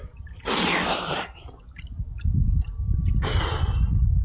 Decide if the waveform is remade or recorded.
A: recorded